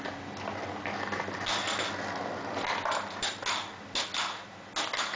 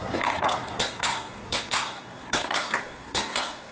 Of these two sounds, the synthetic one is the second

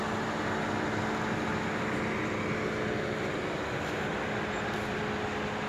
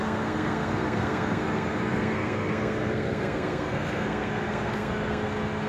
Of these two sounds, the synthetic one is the second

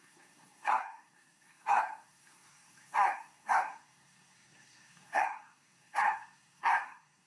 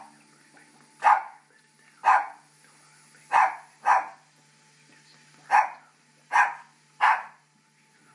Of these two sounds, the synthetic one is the first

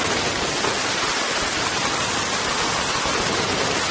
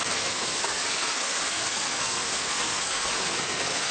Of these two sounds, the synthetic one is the second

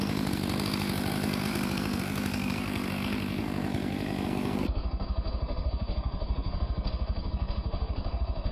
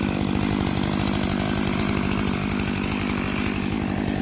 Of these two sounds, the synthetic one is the first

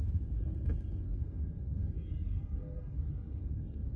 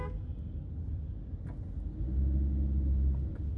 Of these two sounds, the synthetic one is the first